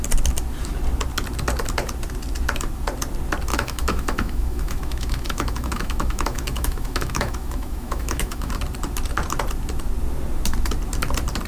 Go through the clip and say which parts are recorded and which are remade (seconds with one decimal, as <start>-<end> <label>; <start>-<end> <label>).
0.0-3.5 recorded; 3.5-8.5 remade; 8.5-11.5 recorded